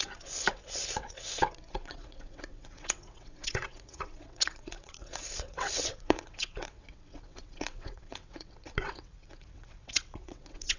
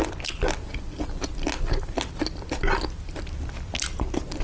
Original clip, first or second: second